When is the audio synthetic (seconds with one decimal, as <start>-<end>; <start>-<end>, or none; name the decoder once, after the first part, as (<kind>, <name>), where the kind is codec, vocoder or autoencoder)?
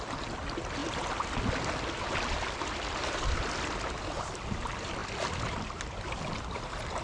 none